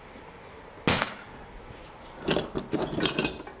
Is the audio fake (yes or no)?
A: no